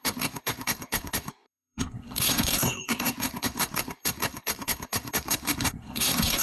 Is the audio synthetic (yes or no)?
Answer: yes